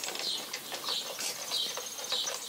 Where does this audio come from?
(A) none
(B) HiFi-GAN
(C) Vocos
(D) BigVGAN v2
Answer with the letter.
A